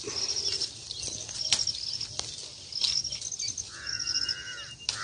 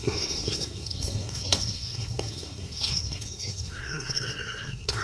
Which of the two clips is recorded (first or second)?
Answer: first